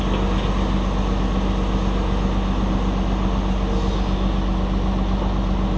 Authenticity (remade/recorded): recorded